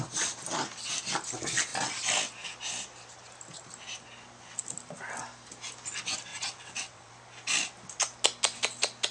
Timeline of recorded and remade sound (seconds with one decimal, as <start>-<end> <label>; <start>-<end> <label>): 0.0-6.3 recorded; 6.3-7.1 remade; 7.1-9.1 recorded